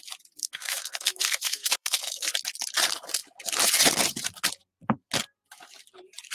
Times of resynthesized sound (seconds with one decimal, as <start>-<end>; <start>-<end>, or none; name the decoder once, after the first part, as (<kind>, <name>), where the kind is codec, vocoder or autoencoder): 0.4-2.3 (codec, SNAC)